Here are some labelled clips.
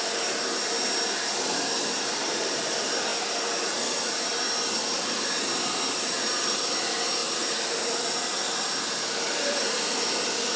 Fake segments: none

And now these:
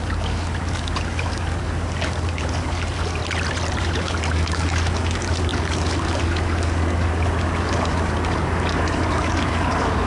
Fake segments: 0.0-3.2 (codec, DAC); 3.8-10.1

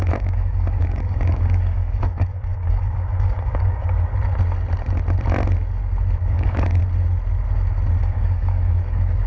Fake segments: 0.0-4.1 (codec, DAC); 6.3-6.8; 8.0-9.3

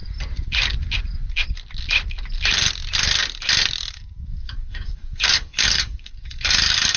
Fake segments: 3.8-7.0 (codec, DAC)

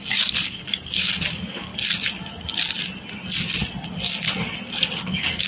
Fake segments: 0.0-1.7 (codec, DAC); 5.0-5.5